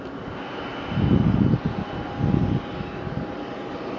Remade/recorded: recorded